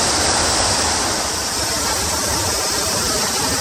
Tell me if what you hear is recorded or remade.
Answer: remade